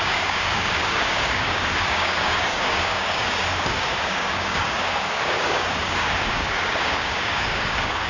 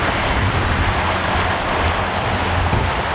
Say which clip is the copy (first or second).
first